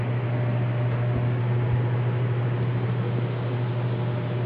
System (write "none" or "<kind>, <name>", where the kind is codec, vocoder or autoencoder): none